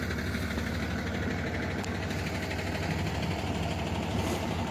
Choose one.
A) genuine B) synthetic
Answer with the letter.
B